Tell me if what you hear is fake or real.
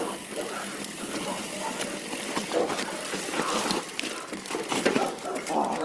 fake